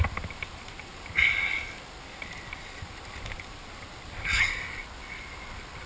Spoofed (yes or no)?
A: no